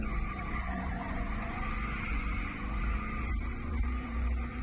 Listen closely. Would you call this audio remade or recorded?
remade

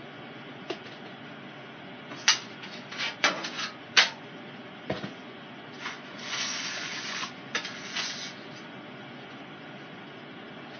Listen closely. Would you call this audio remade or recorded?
remade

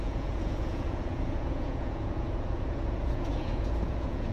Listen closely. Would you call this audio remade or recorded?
remade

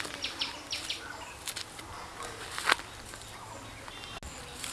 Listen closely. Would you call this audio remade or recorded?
recorded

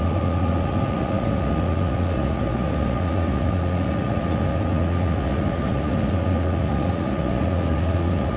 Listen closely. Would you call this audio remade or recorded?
remade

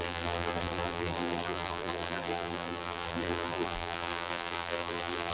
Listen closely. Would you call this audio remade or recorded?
remade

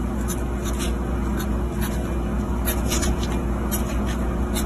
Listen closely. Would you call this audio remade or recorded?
recorded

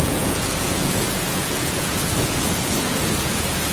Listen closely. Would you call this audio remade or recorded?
remade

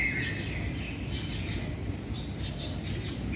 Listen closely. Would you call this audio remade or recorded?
recorded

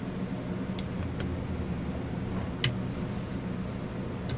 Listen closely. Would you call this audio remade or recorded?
recorded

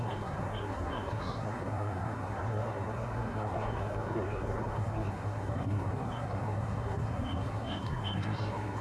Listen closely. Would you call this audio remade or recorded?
remade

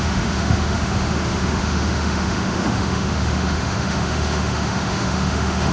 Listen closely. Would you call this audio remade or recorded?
remade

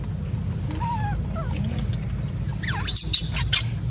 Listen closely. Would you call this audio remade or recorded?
recorded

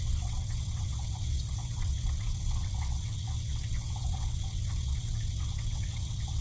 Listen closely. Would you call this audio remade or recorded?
remade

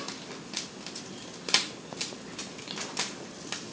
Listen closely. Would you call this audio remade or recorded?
recorded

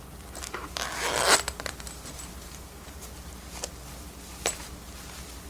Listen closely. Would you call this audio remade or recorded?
recorded